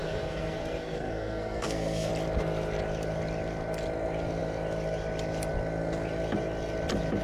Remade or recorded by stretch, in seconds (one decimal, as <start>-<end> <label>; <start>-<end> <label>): 0.0-2.1 remade; 2.1-7.2 recorded